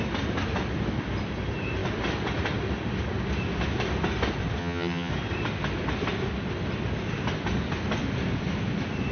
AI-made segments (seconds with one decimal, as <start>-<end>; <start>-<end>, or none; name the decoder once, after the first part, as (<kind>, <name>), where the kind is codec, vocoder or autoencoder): 4.6-5.1 (vocoder, HiFi-GAN)